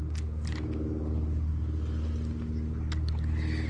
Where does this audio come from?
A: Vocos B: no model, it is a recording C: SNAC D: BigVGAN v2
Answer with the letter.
B